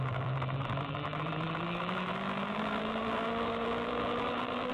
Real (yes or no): no